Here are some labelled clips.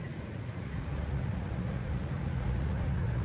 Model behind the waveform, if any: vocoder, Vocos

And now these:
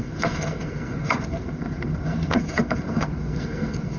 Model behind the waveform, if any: codec, SNAC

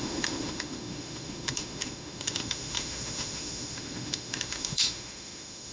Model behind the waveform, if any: autoencoder, DAC-VAE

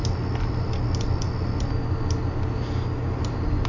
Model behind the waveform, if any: none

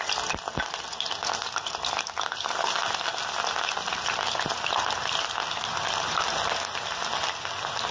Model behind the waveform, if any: none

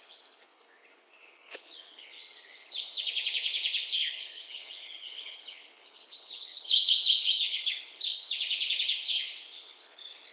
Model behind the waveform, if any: codec, HILCodec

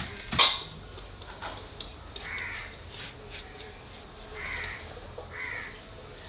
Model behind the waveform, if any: none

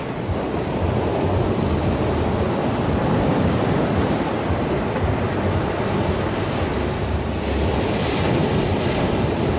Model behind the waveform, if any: none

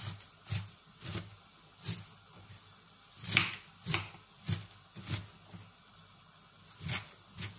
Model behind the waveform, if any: none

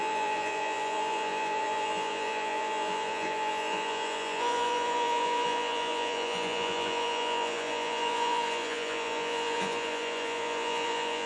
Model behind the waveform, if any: vocoder, Vocos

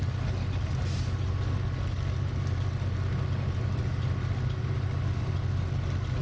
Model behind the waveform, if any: none